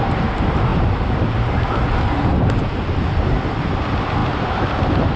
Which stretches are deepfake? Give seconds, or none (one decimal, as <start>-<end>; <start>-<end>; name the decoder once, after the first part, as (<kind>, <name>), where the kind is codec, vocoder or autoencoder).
0.0-5.2 (vocoder, BigVGAN v2)